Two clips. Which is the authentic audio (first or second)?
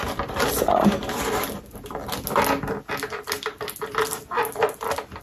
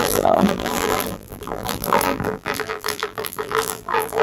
first